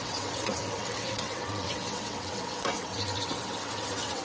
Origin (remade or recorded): remade